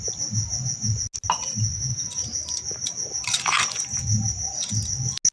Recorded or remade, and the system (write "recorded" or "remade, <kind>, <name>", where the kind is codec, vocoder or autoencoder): recorded